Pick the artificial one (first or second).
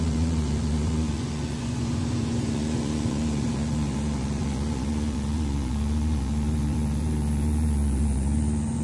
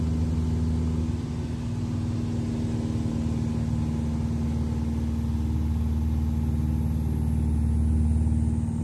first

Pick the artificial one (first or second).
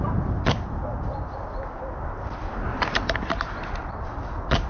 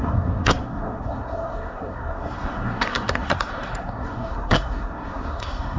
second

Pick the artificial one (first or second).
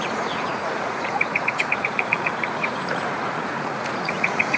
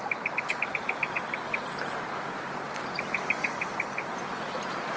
first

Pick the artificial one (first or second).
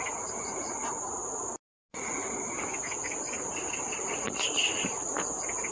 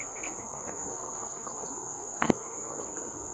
second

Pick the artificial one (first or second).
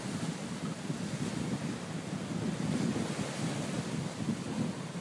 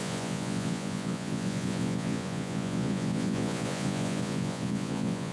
second